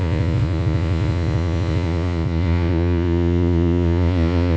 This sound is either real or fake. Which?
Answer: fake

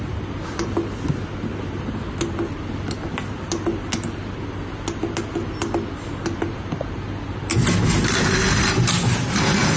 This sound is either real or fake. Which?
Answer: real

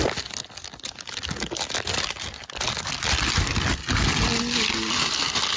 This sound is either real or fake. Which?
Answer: real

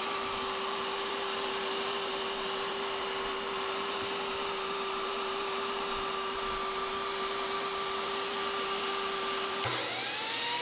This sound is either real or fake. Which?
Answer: fake